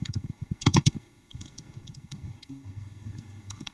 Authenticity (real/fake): fake